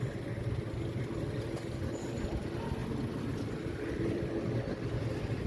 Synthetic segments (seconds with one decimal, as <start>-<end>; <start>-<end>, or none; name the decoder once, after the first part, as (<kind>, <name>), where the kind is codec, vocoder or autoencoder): 2.8-4.3 (vocoder, BigVGAN v2)